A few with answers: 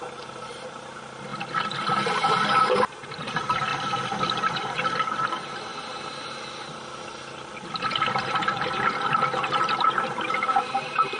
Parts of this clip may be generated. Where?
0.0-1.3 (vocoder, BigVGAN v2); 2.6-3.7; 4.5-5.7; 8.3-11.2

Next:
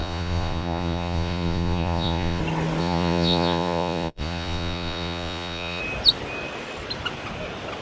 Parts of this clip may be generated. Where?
0.0-2.4 (vocoder, Vocos); 2.8-5.8

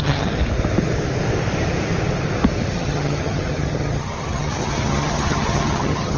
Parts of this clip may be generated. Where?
0.0-0.4 (vocoder, HiFi-GAN); 2.7-6.2

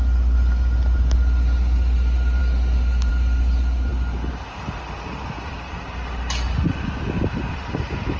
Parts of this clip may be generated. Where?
none

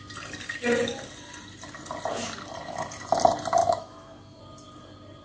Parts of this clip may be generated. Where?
3.6-4.4 (autoencoder, DAC-VAE)